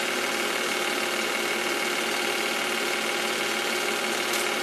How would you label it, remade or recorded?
recorded